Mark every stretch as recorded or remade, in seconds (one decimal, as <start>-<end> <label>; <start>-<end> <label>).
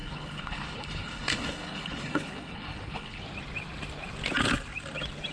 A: 0.0-3.2 remade; 3.2-5.3 recorded